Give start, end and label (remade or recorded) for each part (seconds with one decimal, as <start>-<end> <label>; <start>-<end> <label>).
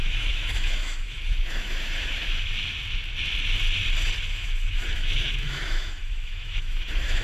0.0-2.5 remade; 2.5-4.3 recorded; 4.3-7.2 remade